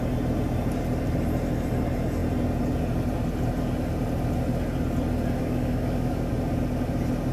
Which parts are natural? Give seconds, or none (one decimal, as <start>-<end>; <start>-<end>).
0.0-5.4; 6.3-7.3